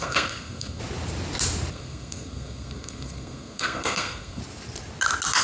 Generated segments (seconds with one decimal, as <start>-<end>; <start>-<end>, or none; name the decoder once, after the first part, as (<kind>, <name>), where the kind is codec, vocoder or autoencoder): 0.0-0.8 (codec, SNAC); 1.7-4.4